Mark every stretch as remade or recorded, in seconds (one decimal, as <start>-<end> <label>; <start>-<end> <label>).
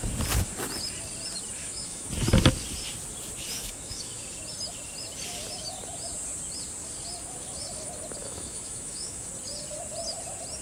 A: 0.0-1.6 recorded; 1.6-2.1 remade; 2.1-3.6 recorded; 3.6-4.2 remade; 4.2-8.2 recorded; 8.2-9.3 remade; 9.3-10.6 recorded